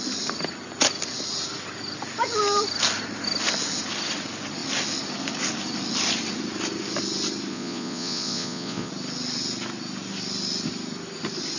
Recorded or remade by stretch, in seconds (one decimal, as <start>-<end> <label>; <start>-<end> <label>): 0.0-7.5 recorded; 7.5-8.9 remade; 8.9-11.6 recorded